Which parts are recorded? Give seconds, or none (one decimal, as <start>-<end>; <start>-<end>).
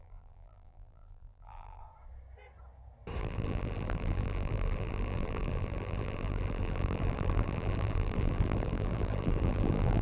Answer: 1.8-3.2